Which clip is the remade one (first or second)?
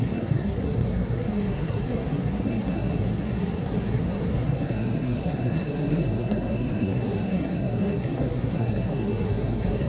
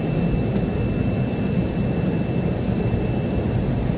first